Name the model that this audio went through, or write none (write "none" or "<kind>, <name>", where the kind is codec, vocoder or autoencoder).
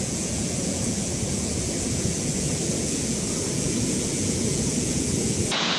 vocoder, Vocos